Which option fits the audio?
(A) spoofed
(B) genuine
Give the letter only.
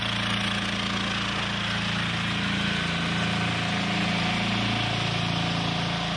B